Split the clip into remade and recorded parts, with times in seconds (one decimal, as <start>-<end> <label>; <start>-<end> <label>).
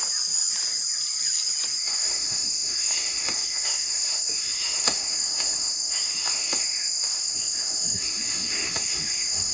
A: 0.0-1.8 recorded; 1.8-9.5 remade